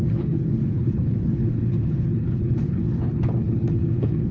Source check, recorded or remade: remade